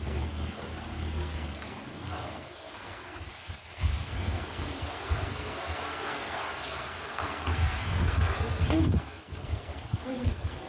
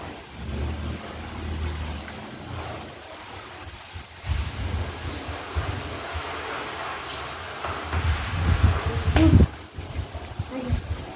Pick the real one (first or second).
second